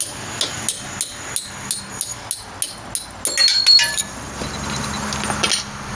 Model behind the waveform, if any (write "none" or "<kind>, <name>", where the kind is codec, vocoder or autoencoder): none